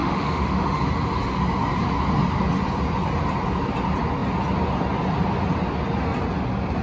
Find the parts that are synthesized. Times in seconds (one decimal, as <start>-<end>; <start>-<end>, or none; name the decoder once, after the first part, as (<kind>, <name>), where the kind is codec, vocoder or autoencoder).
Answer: 0.0-0.8 (autoencoder, DAC-VAE)